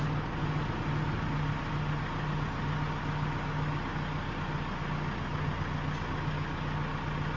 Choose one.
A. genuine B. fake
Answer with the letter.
A